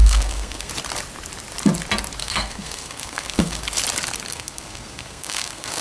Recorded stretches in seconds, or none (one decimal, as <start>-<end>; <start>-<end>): 0.7-2.2; 3.6-4.3